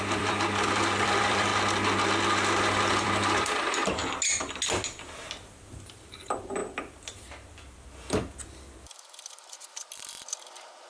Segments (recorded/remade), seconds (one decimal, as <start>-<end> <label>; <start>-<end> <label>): 0.0-1.5 remade; 1.5-2.6 recorded; 2.6-4.0 remade; 4.0-5.3 recorded; 5.3-10.9 remade